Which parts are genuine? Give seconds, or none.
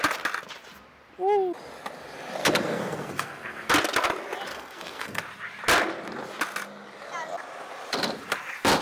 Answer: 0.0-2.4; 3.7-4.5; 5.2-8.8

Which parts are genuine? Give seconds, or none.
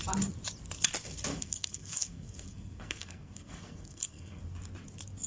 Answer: 0.0-1.3; 4.4-5.3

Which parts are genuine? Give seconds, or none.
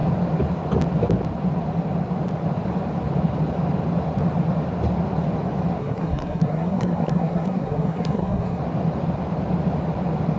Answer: 0.0-5.8; 8.6-10.4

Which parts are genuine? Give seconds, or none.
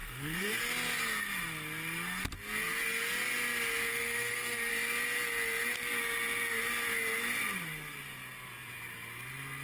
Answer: 0.6-3.9; 4.7-9.6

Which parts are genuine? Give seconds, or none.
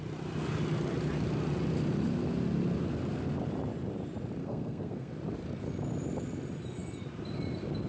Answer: 0.0-4.4; 5.1-7.9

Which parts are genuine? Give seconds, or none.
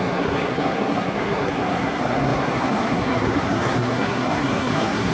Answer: none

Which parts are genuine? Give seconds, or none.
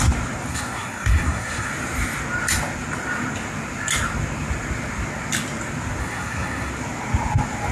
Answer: 0.0-0.5; 1.7-6.0; 6.7-7.7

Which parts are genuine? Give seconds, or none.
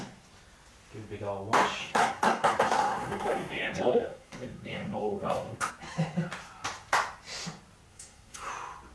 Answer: 0.0-1.8; 5.7-7.9; 8.5-8.9